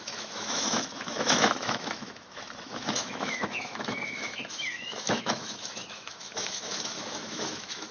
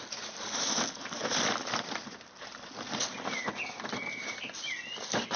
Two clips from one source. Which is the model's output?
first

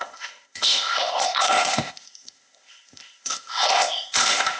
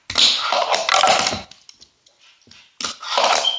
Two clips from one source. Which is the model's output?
first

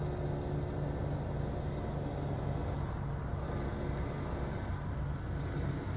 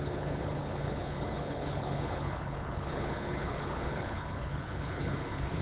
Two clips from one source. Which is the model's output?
second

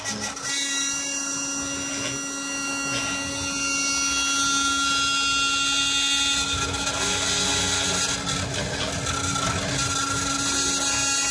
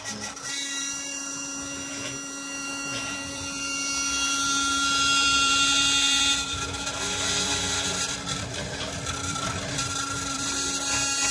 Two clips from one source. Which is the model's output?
second